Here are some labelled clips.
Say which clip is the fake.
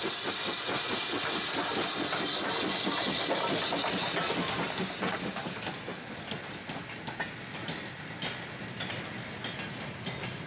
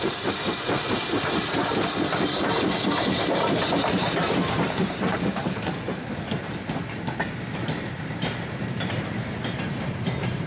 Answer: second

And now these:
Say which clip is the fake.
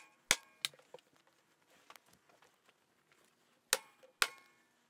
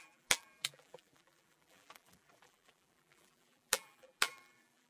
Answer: second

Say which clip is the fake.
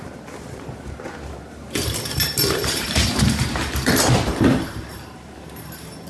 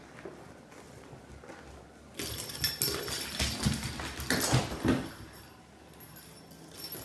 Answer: first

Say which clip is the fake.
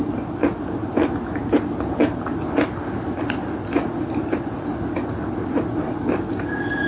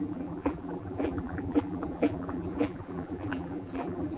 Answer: second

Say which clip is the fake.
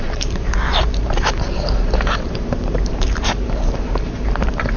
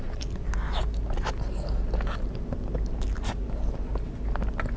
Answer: first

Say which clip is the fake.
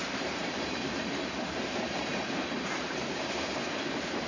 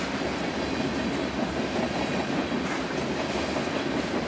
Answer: first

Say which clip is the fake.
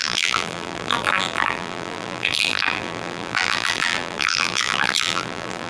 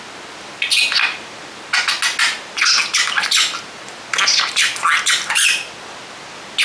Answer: first